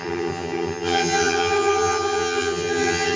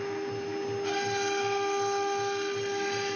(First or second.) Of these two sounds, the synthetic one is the first